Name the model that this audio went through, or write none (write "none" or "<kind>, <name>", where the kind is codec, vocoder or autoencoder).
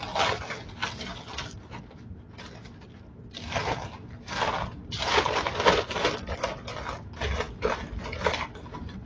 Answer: none